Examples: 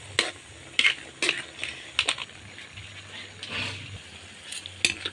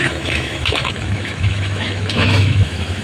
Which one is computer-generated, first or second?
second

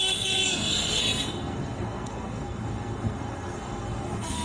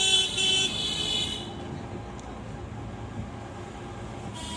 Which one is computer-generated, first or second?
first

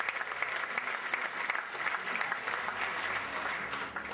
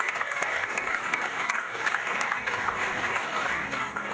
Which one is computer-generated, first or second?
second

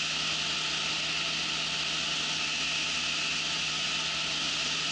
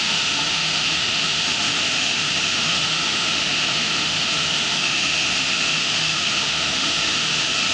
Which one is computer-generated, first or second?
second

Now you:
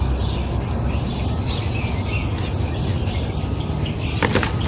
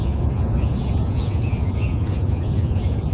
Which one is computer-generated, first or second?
second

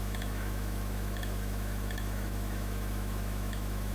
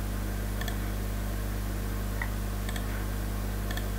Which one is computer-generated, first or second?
first